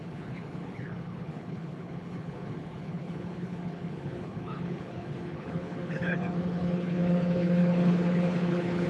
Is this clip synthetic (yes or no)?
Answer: yes